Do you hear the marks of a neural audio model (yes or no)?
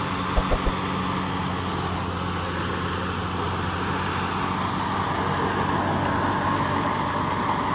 no